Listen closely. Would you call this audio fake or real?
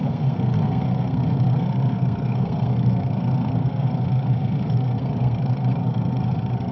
fake